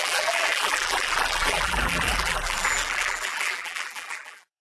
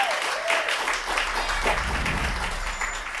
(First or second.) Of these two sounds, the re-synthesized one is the first